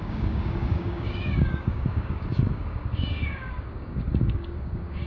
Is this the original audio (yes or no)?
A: no